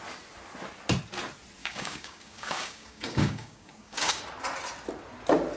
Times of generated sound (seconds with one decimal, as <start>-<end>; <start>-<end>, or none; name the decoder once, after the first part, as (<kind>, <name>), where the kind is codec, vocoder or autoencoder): 1.6-4.2 (codec, DAC)